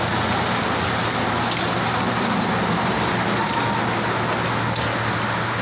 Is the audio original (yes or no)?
yes